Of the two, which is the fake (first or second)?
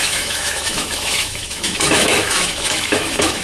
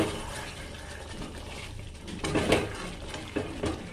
first